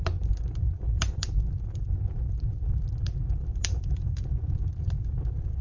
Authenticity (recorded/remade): remade